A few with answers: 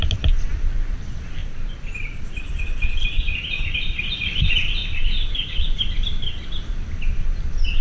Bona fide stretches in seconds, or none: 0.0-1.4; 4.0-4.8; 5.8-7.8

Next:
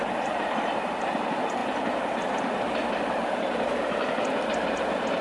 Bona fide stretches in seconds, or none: 1.6-4.7

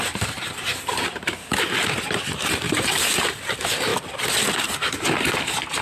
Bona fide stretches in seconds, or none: 3.9-5.8

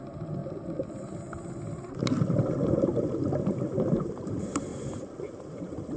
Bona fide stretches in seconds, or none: 0.4-4.0; 4.7-5.4

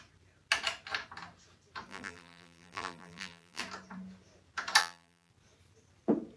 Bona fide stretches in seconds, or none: 0.0-1.9; 3.6-4.8; 5.3-6.4

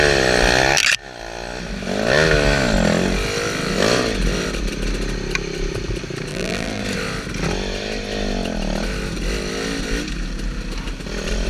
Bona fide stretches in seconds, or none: 0.0-6.3; 6.8-11.5

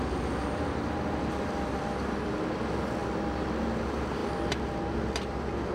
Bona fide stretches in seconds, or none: 0.0-5.7

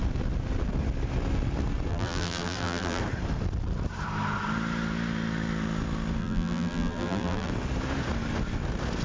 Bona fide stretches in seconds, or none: 0.0-1.9; 3.0-6.2; 7.5-9.0